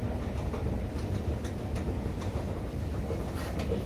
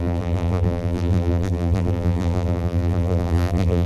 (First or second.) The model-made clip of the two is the second